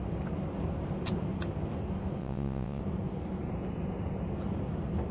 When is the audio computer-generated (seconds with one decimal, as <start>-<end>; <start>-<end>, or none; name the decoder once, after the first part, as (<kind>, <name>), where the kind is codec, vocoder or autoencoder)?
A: 2.2-2.8 (vocoder, Vocos)